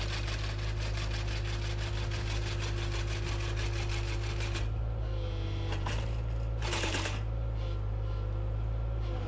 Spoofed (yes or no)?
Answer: no